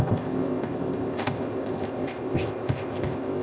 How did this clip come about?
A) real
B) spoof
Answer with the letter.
B